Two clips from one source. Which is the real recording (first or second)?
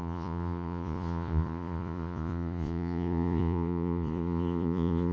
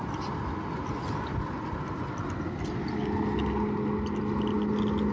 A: second